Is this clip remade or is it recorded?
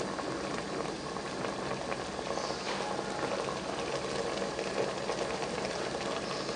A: recorded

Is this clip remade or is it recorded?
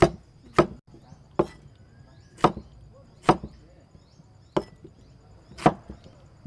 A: recorded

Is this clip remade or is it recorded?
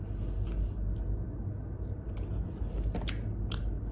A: recorded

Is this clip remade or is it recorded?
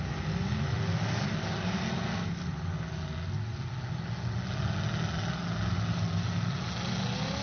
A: recorded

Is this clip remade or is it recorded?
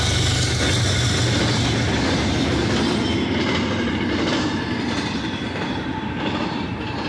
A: recorded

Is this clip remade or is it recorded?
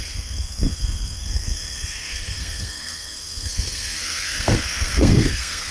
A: remade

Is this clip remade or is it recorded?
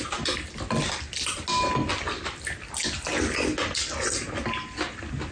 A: recorded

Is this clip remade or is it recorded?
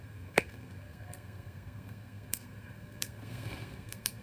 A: remade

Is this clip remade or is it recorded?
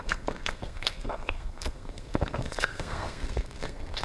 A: remade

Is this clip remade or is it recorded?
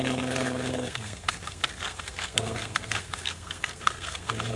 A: remade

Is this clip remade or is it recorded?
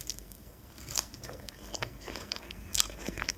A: remade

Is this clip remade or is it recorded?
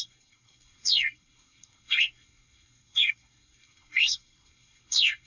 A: remade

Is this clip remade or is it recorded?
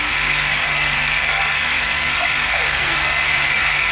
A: remade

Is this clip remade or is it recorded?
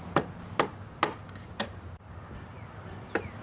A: recorded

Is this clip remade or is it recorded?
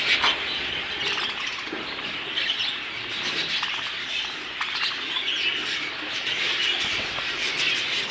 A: recorded